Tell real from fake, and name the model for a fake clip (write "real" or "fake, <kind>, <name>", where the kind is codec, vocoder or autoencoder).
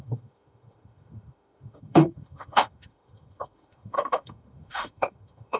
fake, autoencoder, DAC-VAE